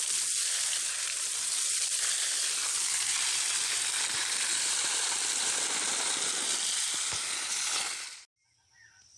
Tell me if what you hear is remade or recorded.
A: recorded